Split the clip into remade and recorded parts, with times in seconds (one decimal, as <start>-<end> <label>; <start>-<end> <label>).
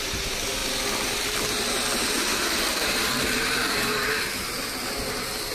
0.0-5.5 recorded